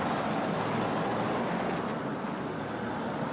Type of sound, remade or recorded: recorded